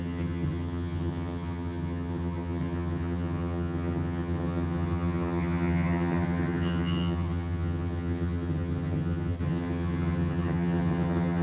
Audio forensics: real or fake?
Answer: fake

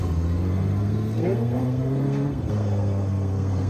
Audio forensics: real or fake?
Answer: fake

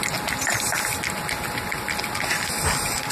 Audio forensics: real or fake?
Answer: real